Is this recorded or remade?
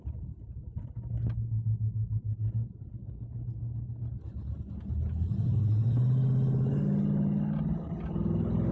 recorded